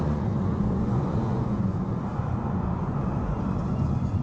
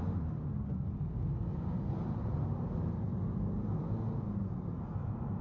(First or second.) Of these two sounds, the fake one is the first